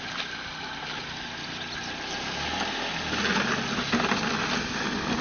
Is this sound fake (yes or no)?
no